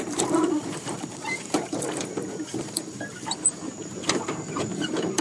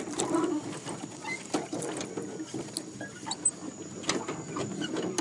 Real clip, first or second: second